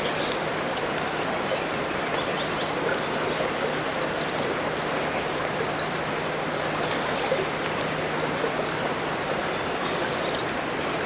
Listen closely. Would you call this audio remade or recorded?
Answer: recorded